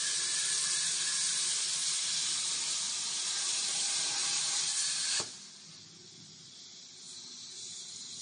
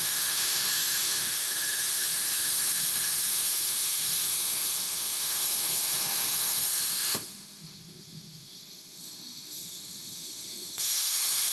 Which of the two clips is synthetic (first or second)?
second